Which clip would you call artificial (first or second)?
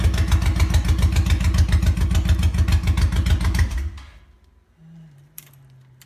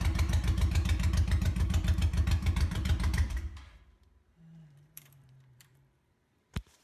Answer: second